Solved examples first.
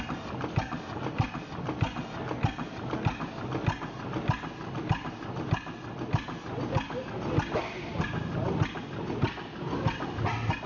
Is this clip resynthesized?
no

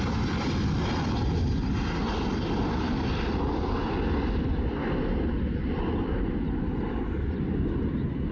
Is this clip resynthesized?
no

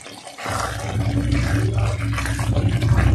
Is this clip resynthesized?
no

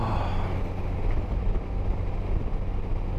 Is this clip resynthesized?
no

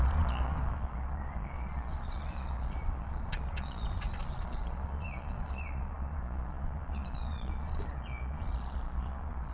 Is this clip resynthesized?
yes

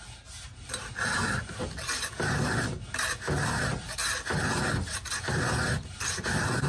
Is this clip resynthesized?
no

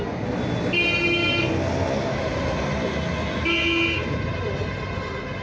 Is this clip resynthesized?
no